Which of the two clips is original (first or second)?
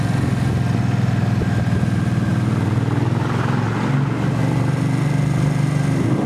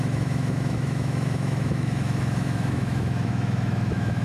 first